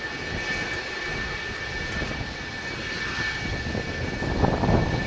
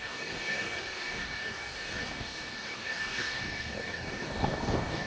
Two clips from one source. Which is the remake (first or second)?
second